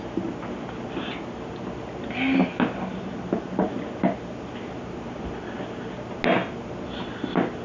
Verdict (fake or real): real